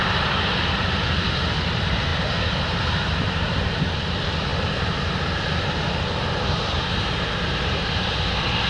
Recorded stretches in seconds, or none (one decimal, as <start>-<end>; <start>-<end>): 4.5-6.5

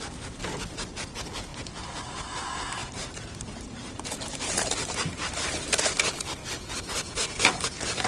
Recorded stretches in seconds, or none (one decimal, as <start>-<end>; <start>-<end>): 0.0-2.8; 6.9-8.1

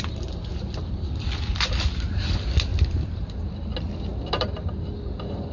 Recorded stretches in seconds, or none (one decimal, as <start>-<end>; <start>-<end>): 0.0-0.5; 1.9-2.7; 3.4-4.1; 4.7-5.5

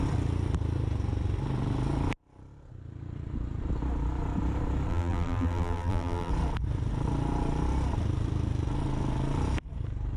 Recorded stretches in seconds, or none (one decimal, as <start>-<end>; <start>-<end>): 0.0-4.9; 6.3-10.2

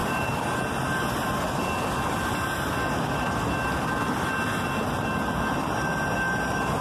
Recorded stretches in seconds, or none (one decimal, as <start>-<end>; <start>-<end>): 0.0-6.8

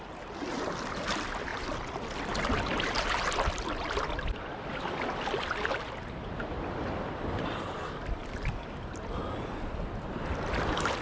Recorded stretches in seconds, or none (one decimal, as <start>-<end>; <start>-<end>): 0.0-11.0